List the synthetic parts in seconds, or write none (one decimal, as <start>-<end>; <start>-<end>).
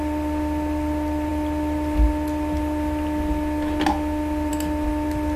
none